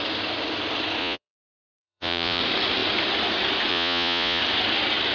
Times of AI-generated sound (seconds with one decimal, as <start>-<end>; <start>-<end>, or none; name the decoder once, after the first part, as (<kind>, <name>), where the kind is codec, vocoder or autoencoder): 1.0-2.4 (vocoder, Vocos); 3.7-4.4